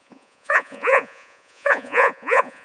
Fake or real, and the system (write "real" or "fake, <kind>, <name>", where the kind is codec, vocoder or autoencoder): fake, vocoder, Vocos